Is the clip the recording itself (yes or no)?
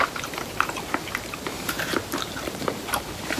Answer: no